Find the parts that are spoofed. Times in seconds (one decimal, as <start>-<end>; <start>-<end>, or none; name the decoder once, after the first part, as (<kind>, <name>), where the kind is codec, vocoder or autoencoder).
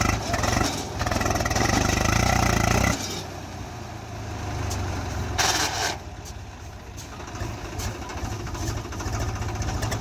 none